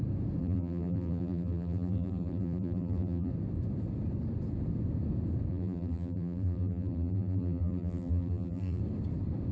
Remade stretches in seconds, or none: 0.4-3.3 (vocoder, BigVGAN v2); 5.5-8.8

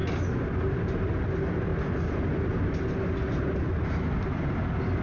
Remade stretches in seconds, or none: 0.5-1.7 (vocoder, BigVGAN v2)

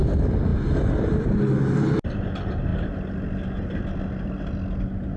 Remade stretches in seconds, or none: 0.5-1.4 (vocoder, BigVGAN v2)

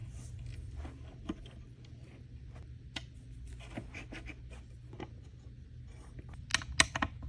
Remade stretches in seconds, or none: none

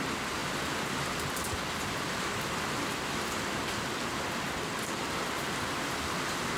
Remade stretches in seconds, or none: none

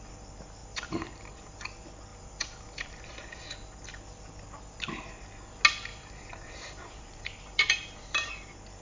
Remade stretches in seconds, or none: 0.6-1.4 (vocoder, BigVGAN v2); 2.1-3.8; 5.9-8.3

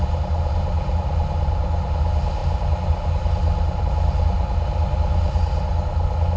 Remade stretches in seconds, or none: none

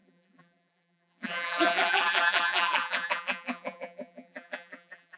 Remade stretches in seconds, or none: 0.0-5.2 (vocoder, BigVGAN v2)